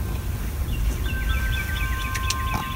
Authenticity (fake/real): real